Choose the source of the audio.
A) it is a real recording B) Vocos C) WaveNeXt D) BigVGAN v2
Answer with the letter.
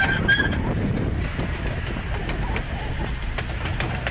A